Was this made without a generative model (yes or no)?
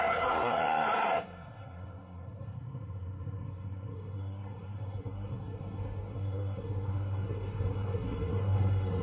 no